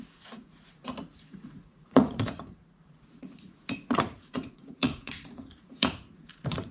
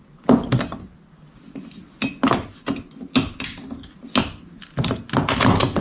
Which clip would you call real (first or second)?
second